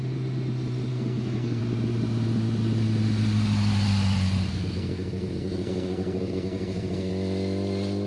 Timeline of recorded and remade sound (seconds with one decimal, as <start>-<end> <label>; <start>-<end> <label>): 0.0-0.9 recorded; 0.9-1.6 remade; 1.6-4.5 recorded; 4.5-7.1 remade; 7.1-8.1 recorded